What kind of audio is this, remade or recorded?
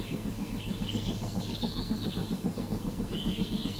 remade